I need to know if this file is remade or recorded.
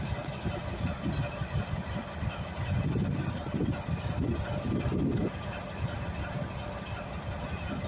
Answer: recorded